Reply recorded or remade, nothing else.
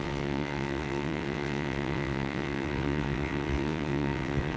remade